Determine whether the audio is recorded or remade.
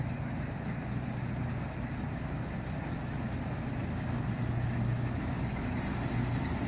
recorded